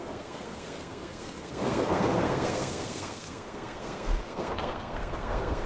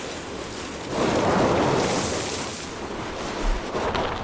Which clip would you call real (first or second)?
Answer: second